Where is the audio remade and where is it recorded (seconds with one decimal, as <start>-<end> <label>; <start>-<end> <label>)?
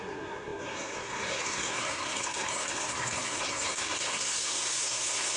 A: 0.0-5.4 remade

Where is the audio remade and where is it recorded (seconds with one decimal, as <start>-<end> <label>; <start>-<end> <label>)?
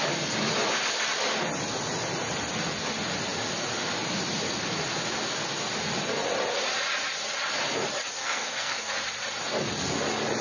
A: 0.0-8.2 recorded; 8.2-8.9 remade; 8.9-10.4 recorded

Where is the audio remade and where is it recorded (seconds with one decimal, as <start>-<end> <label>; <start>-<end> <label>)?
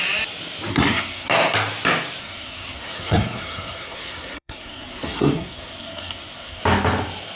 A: 0.0-0.7 recorded; 0.7-1.3 remade; 1.3-2.2 recorded; 2.2-6.6 remade; 6.6-7.4 recorded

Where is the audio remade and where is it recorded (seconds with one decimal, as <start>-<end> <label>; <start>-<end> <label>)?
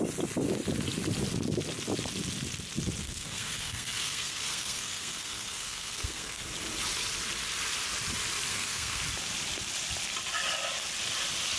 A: 0.0-3.0 recorded; 3.0-6.4 remade; 6.4-8.5 recorded; 8.5-9.0 remade; 9.0-11.6 recorded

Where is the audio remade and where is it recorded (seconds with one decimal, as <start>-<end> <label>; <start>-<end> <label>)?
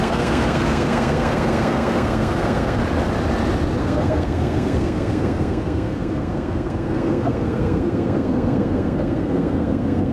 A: 0.0-2.8 remade; 2.8-3.8 recorded; 3.8-10.1 remade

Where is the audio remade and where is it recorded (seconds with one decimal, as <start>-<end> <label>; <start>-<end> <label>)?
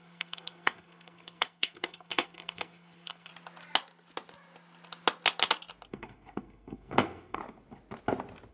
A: 0.0-3.3 remade; 3.3-5.9 recorded; 5.9-7.4 remade; 7.4-8.5 recorded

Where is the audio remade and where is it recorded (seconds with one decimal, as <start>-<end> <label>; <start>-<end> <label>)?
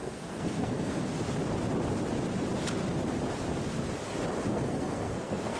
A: 0.0-1.1 remade; 1.1-4.5 recorded; 4.5-5.6 remade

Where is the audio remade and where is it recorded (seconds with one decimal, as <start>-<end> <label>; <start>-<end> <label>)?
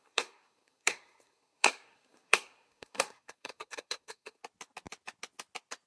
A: 0.0-4.4 remade; 4.4-5.9 recorded